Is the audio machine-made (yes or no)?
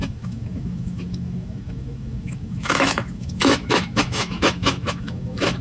yes